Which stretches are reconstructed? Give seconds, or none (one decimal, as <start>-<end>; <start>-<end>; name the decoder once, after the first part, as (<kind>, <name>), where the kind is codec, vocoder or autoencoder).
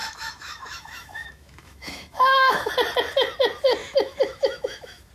0.0-2.7 (autoencoder, DAC-VAE); 3.8-5.1